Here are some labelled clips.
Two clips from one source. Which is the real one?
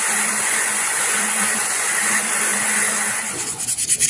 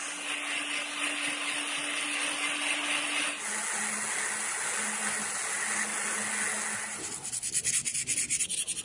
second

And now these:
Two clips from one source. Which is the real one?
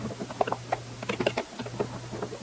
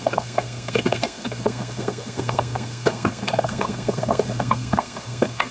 first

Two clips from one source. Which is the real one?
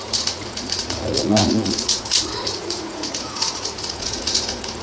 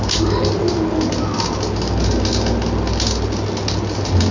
second